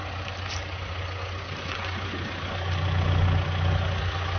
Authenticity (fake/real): real